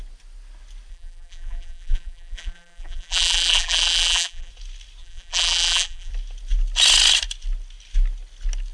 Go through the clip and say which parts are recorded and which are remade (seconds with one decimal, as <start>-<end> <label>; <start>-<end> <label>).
0.0-0.9 recorded; 0.9-4.5 remade; 4.5-5.0 recorded; 5.0-6.1 remade; 6.1-8.7 recorded